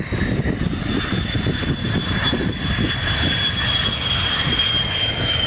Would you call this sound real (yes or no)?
yes